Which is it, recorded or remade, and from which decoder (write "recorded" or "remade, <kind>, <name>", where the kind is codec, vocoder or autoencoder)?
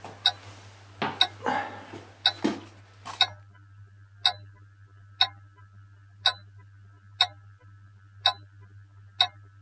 recorded